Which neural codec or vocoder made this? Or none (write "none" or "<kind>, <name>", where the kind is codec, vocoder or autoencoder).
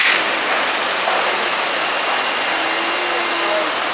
none